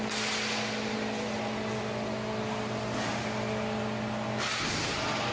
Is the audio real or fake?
real